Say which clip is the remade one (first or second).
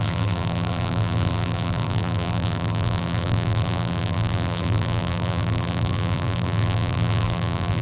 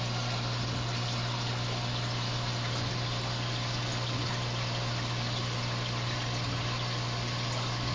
first